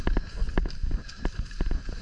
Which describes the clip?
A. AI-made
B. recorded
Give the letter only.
B